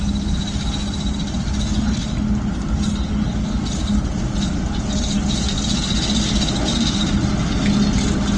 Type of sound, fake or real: real